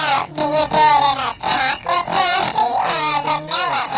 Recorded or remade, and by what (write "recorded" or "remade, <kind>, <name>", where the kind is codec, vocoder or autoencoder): recorded